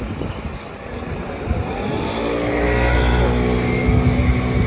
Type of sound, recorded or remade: recorded